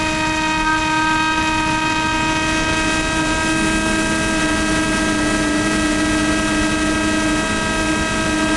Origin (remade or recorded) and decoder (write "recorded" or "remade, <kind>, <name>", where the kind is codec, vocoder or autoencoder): recorded